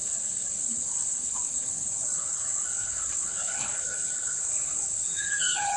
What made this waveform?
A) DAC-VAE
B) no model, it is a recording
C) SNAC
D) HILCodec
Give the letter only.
D